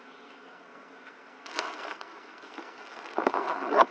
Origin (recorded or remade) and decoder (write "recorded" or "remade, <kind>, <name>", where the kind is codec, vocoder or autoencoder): remade, codec, SNAC